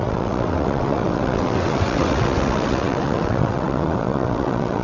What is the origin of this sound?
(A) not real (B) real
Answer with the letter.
A